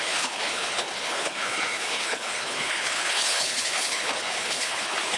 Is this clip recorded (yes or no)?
no